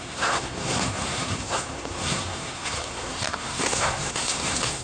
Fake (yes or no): yes